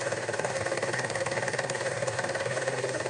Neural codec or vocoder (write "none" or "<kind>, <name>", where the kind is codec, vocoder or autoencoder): codec, SNAC